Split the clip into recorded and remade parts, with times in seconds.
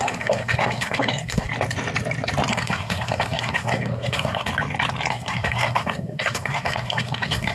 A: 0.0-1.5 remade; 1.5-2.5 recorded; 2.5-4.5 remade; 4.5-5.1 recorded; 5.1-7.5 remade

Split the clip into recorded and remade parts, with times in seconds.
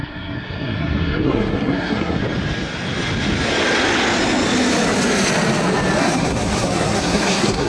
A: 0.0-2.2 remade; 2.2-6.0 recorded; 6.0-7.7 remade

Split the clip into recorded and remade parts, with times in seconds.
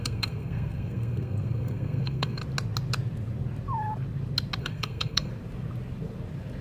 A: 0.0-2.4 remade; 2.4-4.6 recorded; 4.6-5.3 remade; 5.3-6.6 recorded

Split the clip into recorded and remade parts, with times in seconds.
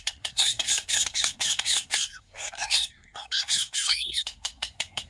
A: 0.0-5.1 remade